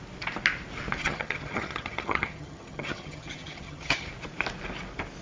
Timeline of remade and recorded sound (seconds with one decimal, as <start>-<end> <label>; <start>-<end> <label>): 0.0-1.0 recorded; 1.0-4.1 remade; 4.1-5.2 recorded